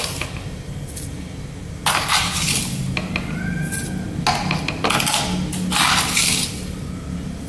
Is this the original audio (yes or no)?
yes